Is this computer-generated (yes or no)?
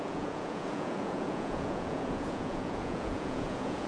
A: yes